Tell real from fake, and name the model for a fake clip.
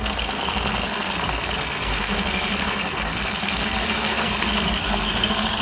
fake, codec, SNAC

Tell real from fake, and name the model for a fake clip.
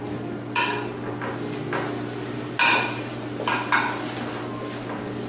real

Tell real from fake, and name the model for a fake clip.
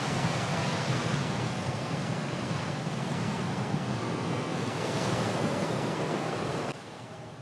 fake, codec, SNAC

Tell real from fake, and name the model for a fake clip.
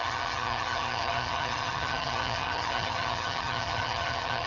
fake, vocoder, HiFi-GAN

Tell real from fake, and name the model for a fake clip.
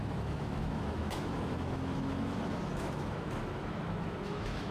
fake, autoencoder, DAC-VAE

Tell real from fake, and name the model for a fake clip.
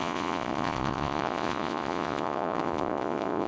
fake, vocoder, Vocos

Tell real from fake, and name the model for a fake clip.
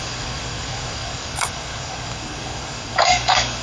fake, codec, DAC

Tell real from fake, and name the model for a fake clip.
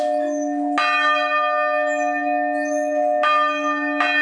real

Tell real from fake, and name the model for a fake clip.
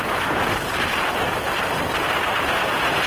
fake, vocoder, BigVGAN v2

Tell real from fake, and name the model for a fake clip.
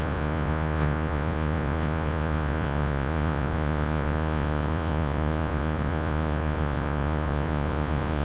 fake, vocoder, Vocos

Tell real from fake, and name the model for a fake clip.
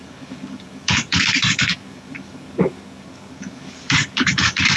fake, codec, DAC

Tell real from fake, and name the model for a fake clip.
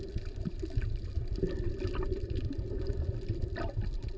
real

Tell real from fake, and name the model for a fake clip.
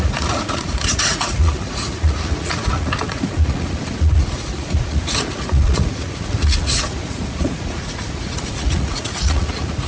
fake, vocoder, Vocos